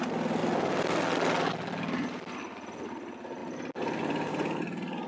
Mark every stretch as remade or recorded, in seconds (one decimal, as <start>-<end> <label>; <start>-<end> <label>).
0.0-5.1 recorded